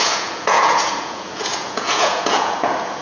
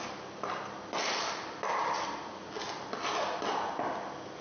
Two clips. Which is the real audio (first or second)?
second